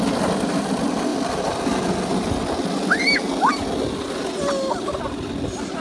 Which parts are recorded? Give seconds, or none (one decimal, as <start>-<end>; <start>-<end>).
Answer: 0.0-5.8